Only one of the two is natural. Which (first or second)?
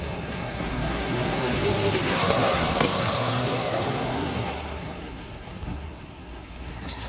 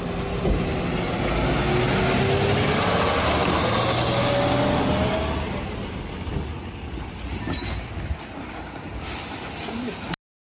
second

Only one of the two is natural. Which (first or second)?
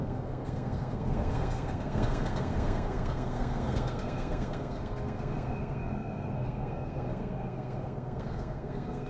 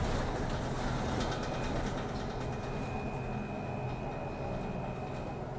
second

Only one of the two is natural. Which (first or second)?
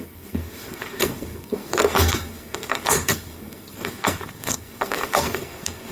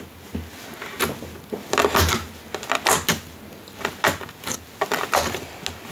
second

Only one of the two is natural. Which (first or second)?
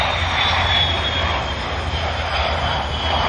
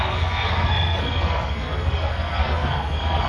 first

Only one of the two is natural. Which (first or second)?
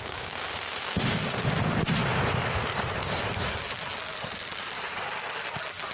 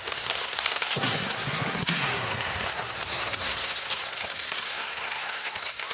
first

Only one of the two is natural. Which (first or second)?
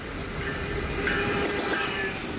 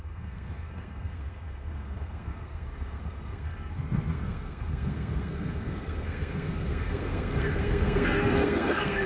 first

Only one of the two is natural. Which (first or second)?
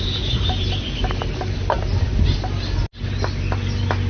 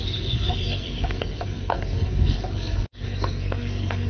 first